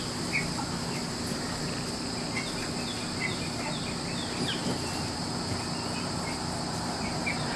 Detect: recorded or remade recorded